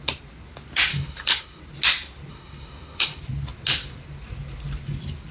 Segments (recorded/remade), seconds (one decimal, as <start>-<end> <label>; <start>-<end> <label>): 0.0-0.9 recorded; 0.9-1.6 remade; 1.6-2.3 recorded; 2.3-3.2 remade; 3.2-5.3 recorded